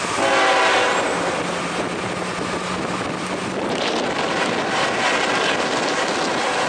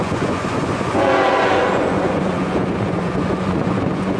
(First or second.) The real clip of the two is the first